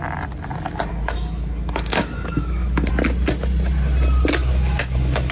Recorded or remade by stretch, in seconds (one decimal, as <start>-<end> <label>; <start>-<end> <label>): 0.0-0.9 recorded; 0.9-2.9 remade; 2.9-4.4 recorded; 4.4-5.3 remade